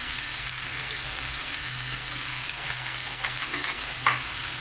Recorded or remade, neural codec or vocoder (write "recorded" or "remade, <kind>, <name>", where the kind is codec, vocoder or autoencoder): remade, codec, SNAC